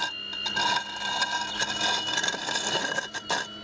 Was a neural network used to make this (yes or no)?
no